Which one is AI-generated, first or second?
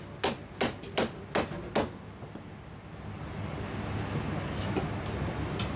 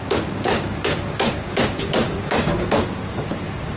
second